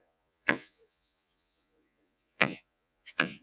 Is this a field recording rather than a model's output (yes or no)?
no